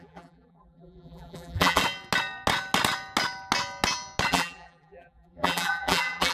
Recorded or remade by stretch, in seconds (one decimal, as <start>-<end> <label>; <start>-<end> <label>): 0.0-1.8 remade; 1.8-4.3 recorded; 4.3-6.3 remade